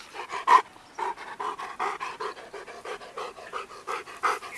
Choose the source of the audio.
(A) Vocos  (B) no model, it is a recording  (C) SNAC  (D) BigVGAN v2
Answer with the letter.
B